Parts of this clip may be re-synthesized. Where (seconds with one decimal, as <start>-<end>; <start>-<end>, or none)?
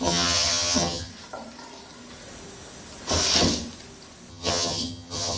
0.0-1.1; 4.3-5.4